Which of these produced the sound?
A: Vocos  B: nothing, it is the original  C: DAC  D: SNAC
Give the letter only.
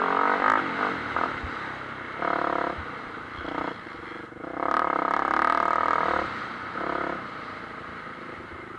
B